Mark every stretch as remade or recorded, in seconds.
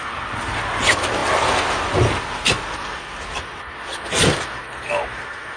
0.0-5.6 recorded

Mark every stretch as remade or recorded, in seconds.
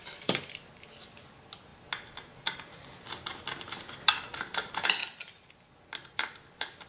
0.0-6.9 recorded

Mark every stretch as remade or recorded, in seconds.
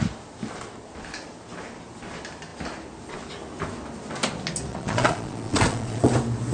0.0-4.7 recorded; 4.7-6.1 remade; 6.1-6.5 recorded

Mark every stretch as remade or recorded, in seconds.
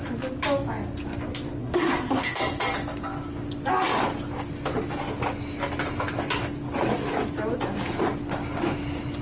0.0-1.6 recorded; 1.6-2.4 remade; 2.4-9.2 recorded